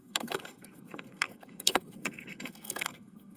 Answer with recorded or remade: remade